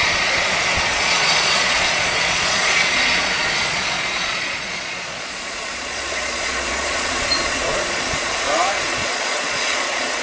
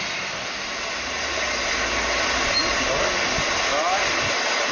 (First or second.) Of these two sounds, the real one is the second